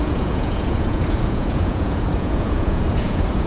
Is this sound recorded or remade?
remade